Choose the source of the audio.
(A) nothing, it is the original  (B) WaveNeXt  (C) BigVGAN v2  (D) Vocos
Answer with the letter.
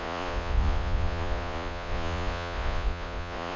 D